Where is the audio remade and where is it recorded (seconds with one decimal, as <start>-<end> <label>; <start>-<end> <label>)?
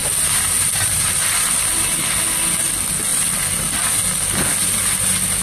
0.0-2.0 remade; 2.0-5.4 recorded